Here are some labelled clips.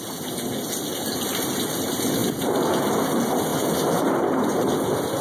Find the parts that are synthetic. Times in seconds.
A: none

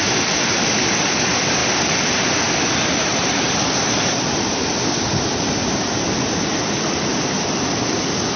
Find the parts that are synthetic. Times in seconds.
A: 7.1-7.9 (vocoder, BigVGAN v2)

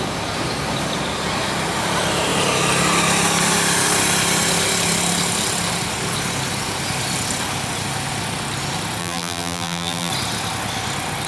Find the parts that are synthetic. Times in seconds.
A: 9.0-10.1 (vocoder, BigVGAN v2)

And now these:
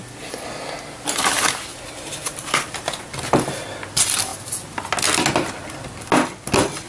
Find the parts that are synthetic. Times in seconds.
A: 1.7-3.7 (vocoder, BigVGAN v2)